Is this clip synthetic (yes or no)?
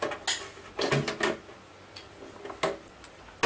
no